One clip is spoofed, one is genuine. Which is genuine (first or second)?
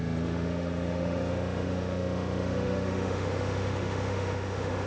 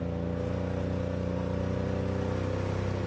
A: second